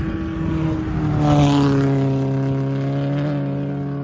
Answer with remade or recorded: recorded